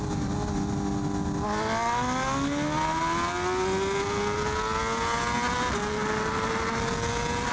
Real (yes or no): yes